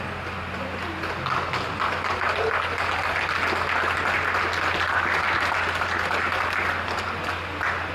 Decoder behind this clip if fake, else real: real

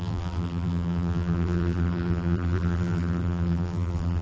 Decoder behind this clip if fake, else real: fake, vocoder, BigVGAN v2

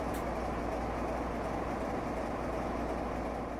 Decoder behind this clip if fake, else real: real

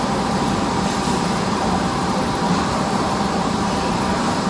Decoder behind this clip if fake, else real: fake, vocoder, BigVGAN v2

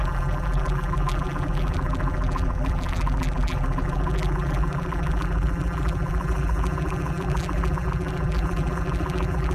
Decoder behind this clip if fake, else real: fake, vocoder, BigVGAN v2